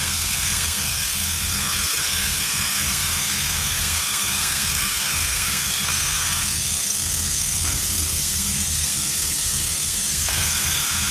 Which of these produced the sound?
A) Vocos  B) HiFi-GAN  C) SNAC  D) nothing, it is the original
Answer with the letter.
C